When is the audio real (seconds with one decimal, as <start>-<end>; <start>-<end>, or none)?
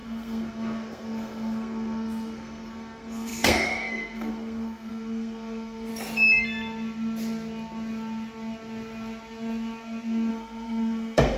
5.9-10.3